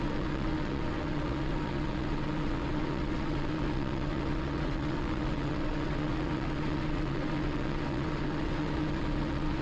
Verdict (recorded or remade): remade